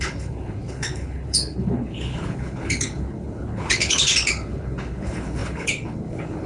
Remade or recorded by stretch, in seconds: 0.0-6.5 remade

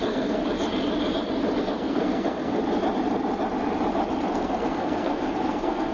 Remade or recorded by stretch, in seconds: 0.0-0.4 remade; 0.4-1.6 recorded; 1.6-2.6 remade; 2.6-4.3 recorded; 4.3-5.9 remade

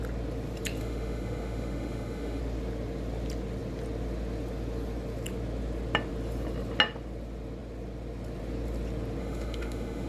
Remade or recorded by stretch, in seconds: 0.0-0.8 recorded; 0.8-2.4 remade; 2.4-9.2 recorded; 9.2-10.1 remade

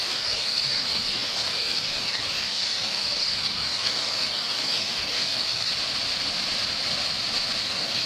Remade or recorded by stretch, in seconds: 0.0-5.7 remade; 5.7-7.6 recorded; 7.6-8.1 remade

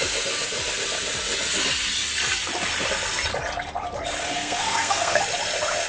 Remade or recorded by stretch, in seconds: 0.0-4.2 recorded; 4.2-5.2 remade; 5.2-5.9 recorded

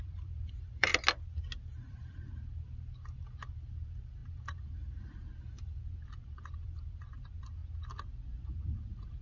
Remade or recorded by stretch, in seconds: 0.0-0.9 remade; 0.9-1.6 recorded; 1.6-7.6 remade; 7.6-8.5 recorded; 8.5-9.2 remade